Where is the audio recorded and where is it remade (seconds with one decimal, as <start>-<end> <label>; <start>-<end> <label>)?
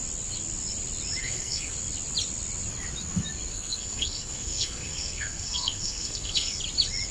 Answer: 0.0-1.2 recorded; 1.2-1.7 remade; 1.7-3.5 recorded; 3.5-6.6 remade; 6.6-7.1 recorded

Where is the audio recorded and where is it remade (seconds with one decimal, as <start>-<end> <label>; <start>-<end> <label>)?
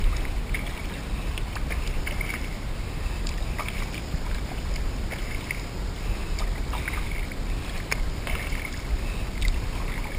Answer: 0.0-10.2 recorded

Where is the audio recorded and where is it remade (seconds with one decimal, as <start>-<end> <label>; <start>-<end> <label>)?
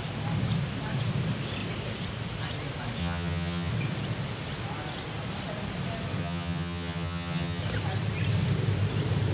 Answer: 0.0-3.0 recorded; 3.0-3.7 remade; 3.7-6.2 recorded; 6.2-7.6 remade; 7.6-9.3 recorded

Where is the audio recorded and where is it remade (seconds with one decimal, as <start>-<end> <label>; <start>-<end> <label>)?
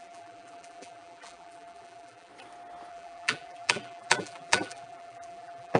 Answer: 0.0-2.3 remade; 2.3-2.9 recorded; 2.9-5.8 remade